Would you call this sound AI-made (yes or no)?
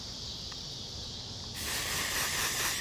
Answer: no